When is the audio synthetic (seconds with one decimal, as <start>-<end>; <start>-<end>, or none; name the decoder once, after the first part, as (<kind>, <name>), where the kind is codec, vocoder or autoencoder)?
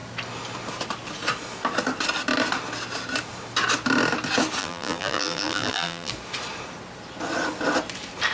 4.6-6.1 (vocoder, BigVGAN v2)